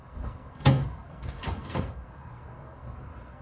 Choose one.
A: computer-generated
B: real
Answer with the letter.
A